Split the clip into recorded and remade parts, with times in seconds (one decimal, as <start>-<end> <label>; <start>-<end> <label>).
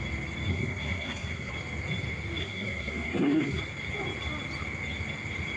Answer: 0.0-0.5 recorded; 0.5-1.5 remade; 1.5-2.4 recorded; 2.4-3.6 remade; 3.6-5.6 recorded